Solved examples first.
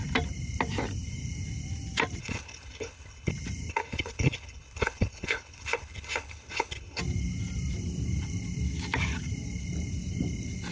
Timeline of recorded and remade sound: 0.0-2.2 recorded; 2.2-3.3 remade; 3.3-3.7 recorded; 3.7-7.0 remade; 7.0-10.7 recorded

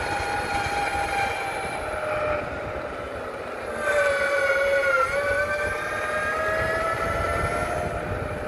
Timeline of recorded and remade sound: 0.0-8.5 recorded

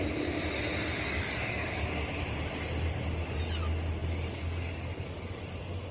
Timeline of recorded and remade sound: 0.0-0.9 recorded; 0.9-2.2 remade; 2.2-4.0 recorded; 4.0-5.4 remade; 5.4-5.9 recorded